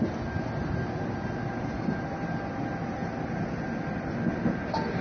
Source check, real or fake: real